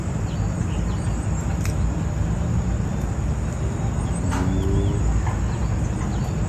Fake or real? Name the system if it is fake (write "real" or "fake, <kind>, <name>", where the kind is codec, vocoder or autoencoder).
real